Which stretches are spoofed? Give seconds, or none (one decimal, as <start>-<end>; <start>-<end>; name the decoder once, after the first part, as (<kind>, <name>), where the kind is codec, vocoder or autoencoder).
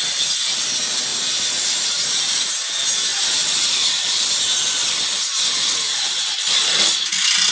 1.1-2.2 (vocoder, BigVGAN v2); 3.1-4.9